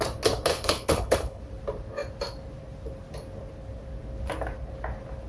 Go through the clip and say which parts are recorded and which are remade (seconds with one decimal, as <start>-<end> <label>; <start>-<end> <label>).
0.0-0.5 recorded; 0.5-1.4 remade; 1.4-5.3 recorded